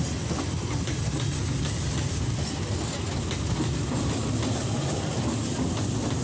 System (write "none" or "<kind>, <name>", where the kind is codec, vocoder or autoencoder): none